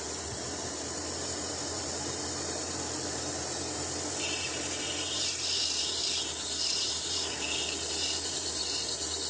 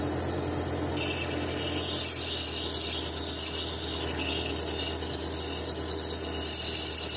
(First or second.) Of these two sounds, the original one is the second